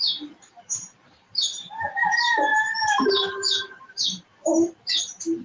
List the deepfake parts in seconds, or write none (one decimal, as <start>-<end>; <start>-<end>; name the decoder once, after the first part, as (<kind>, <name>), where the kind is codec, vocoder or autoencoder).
0.0-2.5 (vocoder, BigVGAN v2); 3.3-5.4